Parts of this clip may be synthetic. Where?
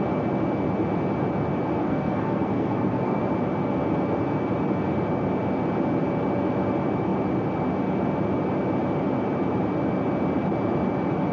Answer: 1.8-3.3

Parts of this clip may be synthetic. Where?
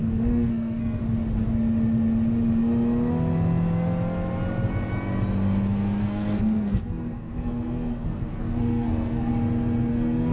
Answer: 0.0-1.0; 6.0-9.3; 9.9-10.3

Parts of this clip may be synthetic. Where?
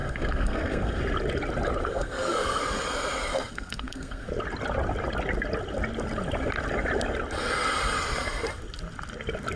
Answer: 0.0-1.0; 1.9-2.6; 3.3-4.3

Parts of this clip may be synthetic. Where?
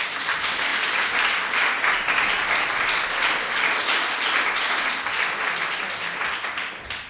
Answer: none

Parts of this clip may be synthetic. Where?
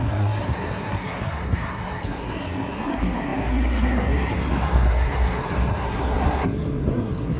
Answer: 0.0-7.4